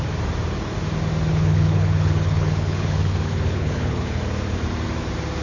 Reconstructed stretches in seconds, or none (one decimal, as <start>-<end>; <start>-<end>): 1.3-4.2